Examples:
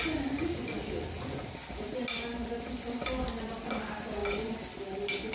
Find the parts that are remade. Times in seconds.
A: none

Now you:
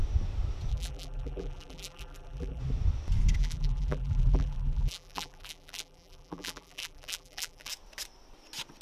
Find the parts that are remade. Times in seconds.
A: 0.7-2.6 (vocoder, BigVGAN v2); 3.4-7.7

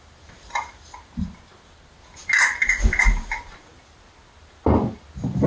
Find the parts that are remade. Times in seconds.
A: none

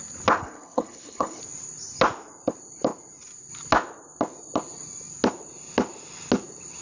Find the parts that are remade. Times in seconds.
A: 0.4-1.4 (codec, HILCodec)

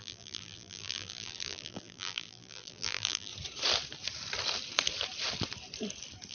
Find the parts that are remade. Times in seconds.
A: 0.0-3.3 (vocoder, BigVGAN v2)